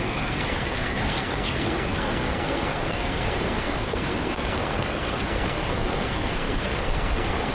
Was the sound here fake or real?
fake